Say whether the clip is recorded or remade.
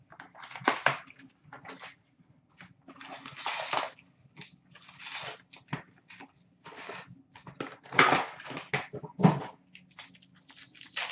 recorded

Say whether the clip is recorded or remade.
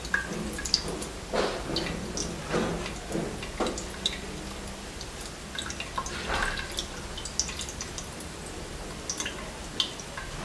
recorded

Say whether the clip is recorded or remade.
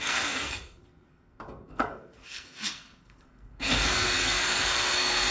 remade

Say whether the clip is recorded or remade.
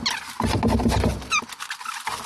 recorded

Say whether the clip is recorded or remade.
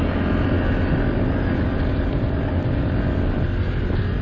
recorded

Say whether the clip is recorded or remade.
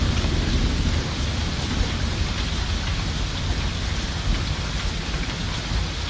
recorded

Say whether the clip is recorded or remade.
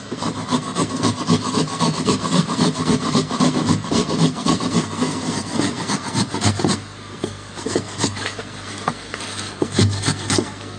remade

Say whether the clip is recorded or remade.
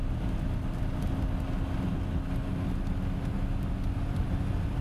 recorded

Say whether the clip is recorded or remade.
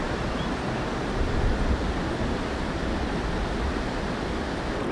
recorded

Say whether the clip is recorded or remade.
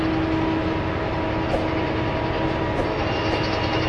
recorded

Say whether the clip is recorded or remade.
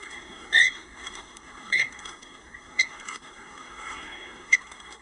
remade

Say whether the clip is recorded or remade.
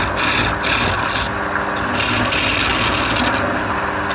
recorded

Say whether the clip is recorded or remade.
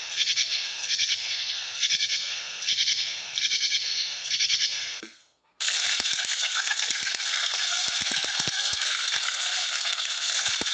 remade